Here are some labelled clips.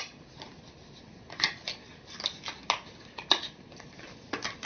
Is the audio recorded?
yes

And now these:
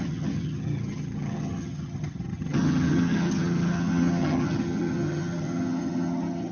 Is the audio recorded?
no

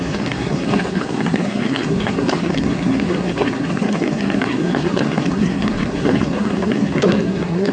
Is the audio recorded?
no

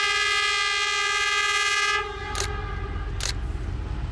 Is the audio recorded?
yes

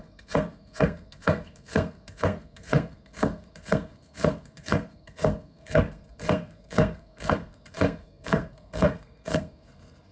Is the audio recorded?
no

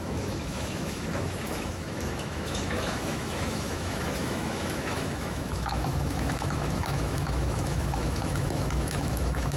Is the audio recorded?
no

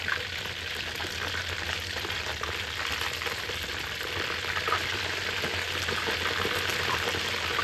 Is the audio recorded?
yes